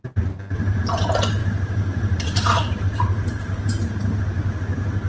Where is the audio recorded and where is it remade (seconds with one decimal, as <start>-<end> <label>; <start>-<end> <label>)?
0.0-1.4 recorded; 1.4-3.8 remade; 3.8-5.1 recorded